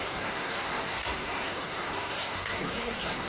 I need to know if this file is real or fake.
fake